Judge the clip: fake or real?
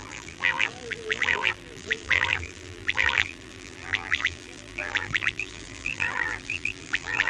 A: fake